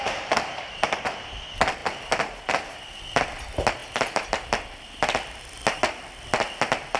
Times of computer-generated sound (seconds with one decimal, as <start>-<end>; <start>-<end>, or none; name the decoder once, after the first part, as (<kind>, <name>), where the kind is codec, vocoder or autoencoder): 1.8-2.4 (vocoder, BigVGAN v2)